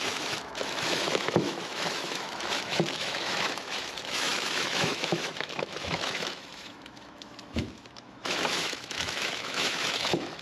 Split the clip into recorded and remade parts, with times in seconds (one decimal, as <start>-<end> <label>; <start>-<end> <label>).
0.0-10.4 remade

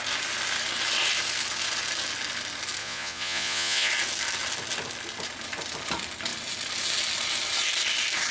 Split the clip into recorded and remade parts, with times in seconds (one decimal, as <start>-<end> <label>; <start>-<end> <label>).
0.0-2.8 recorded; 2.8-3.9 remade; 3.9-8.3 recorded

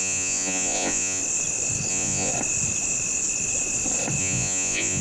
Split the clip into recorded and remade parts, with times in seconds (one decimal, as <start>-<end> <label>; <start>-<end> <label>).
0.0-1.2 remade; 1.2-1.9 recorded; 1.9-2.3 remade; 2.3-4.2 recorded; 4.2-5.0 remade

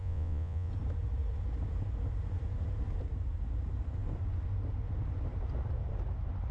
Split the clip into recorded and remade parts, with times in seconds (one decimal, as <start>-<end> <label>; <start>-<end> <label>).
0.0-0.7 remade; 0.7-6.5 recorded

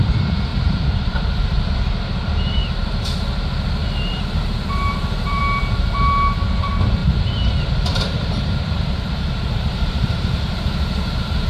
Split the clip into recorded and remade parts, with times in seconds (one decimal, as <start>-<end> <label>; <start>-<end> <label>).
0.0-0.5 recorded; 0.5-1.7 remade; 1.7-2.6 recorded; 2.6-3.2 remade; 3.2-3.8 recorded; 3.8-5.4 remade; 5.4-7.0 recorded; 7.0-10.4 remade; 10.4-11.5 recorded

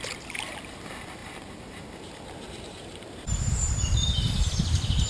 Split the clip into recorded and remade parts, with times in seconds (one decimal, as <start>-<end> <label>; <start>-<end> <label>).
0.0-1.2 recorded; 1.2-4.3 remade; 4.3-5.1 recorded